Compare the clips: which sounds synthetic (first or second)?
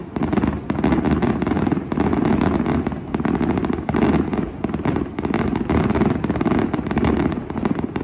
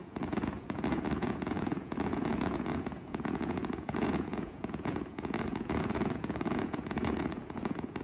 second